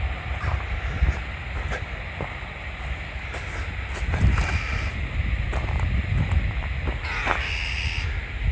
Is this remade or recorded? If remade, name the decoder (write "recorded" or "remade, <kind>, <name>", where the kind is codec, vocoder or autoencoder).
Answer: recorded